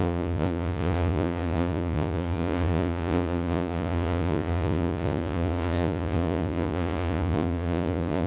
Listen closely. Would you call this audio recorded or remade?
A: remade